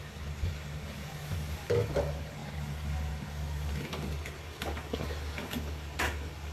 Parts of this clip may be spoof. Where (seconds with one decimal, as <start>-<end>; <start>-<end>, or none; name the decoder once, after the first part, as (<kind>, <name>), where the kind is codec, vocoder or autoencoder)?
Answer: 0.0-6.5 (codec, DAC)